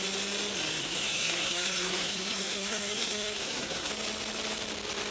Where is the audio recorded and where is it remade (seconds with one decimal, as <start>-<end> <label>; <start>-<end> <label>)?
0.0-0.8 recorded; 0.8-3.9 remade; 3.9-5.1 recorded